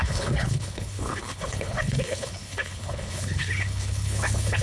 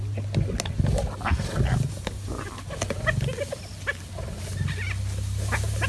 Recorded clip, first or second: second